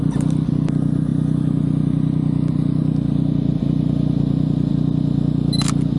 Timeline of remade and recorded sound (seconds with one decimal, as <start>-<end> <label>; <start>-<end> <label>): 0.0-6.0 recorded